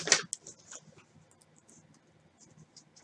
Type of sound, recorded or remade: recorded